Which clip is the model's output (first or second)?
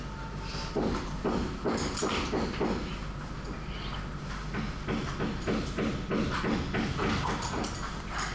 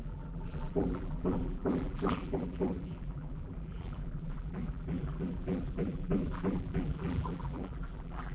second